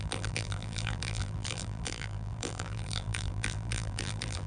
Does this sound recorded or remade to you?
remade